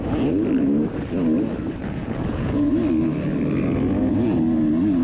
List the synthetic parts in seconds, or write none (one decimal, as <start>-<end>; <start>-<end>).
1.8-2.7